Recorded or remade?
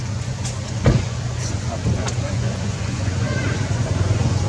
remade